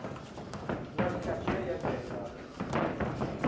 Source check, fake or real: real